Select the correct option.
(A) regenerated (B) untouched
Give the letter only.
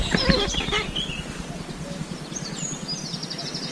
B